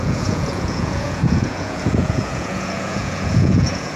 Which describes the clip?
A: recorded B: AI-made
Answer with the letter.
B